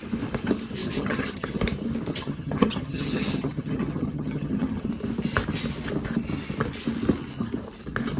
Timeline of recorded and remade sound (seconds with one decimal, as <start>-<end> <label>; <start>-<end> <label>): 0.0-0.8 recorded; 0.8-1.6 remade; 1.6-2.1 recorded; 2.1-4.9 remade; 4.9-8.2 recorded